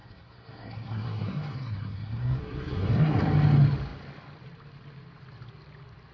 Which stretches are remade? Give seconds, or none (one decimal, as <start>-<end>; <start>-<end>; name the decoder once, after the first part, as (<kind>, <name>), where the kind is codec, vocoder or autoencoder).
0.0-3.2 (codec, SNAC)